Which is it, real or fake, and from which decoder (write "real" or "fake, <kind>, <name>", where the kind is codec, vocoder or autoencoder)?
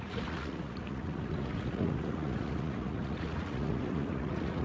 fake, vocoder, Vocos